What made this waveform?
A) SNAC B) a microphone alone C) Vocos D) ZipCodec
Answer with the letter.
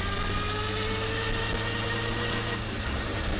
B